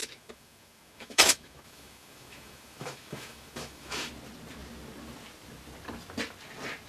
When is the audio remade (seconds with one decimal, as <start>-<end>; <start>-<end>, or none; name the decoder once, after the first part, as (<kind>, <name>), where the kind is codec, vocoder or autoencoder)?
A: 0.0-4.1 (autoencoder, DAC-VAE)